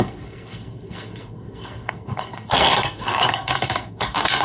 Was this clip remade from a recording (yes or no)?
yes